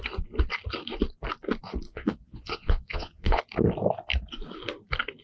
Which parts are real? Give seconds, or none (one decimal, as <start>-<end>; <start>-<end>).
0.0-1.9; 3.4-5.2